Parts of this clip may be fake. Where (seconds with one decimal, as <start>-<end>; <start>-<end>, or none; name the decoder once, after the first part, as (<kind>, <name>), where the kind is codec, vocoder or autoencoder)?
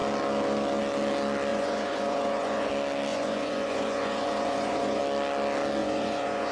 1.5-2.7 (vocoder, Vocos); 3.1-5.0; 5.8-6.5